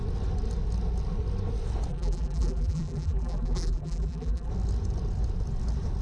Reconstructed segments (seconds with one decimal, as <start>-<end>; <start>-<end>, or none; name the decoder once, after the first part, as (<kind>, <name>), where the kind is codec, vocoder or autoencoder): 1.9-4.5 (vocoder, BigVGAN v2)